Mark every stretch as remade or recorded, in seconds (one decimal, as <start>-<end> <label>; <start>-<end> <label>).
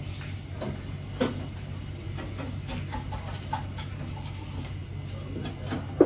0.0-6.1 recorded